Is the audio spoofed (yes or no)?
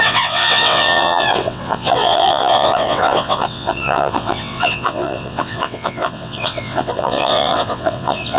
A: yes